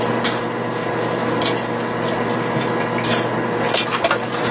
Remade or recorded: recorded